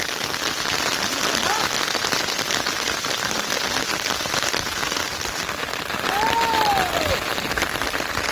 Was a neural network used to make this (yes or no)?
no